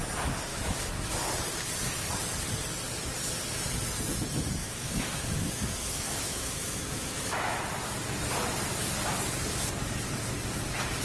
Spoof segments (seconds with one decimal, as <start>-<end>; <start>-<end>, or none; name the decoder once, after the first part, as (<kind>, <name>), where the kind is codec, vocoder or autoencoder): 0.5-1.2 (autoencoder, DAC-VAE); 4.6-7.6